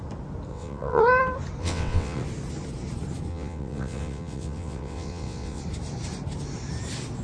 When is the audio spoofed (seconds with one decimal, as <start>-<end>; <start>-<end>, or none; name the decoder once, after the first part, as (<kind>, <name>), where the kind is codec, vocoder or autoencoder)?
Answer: 0.5-1.0 (vocoder, WaveNeXt); 1.6-2.2; 3.3-5.6